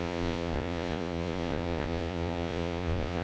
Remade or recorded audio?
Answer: remade